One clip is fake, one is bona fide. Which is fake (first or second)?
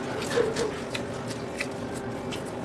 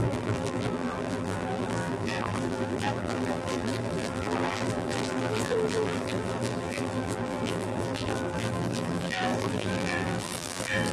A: second